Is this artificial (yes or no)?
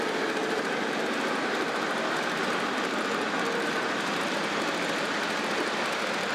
no